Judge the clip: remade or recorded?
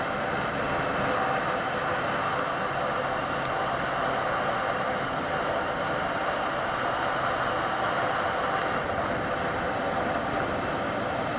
recorded